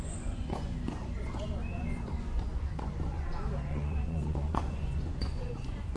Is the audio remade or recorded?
remade